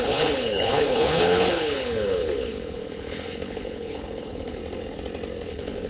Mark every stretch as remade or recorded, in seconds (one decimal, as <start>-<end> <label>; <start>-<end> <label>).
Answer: 0.0-4.6 remade; 4.6-5.5 recorded; 5.5-5.9 remade